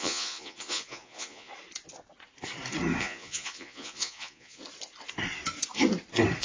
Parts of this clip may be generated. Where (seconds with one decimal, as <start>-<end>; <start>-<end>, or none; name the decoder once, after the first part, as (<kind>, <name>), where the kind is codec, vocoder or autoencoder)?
0.0-1.5 (vocoder, Vocos); 3.0-4.6